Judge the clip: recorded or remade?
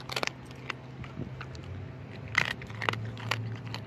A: recorded